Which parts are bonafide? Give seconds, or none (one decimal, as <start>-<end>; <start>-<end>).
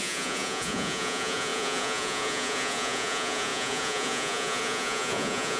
none